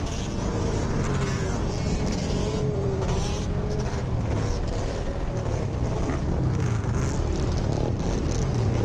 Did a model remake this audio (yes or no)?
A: no